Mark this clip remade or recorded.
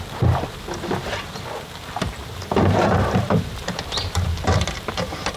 remade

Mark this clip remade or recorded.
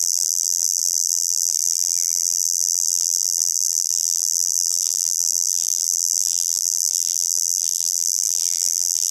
remade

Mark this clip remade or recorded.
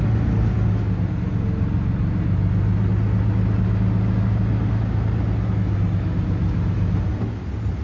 recorded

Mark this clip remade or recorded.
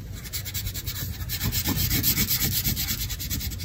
recorded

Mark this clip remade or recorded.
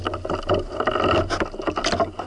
recorded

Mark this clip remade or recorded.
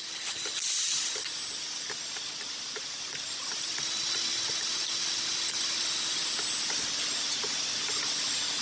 recorded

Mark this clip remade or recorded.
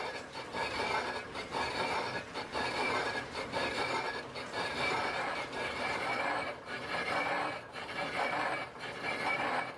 remade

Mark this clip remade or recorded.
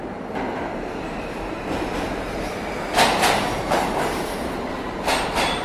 remade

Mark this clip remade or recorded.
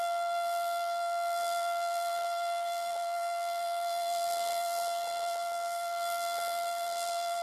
remade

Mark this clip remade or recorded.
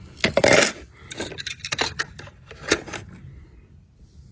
recorded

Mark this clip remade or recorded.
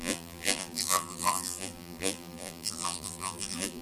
remade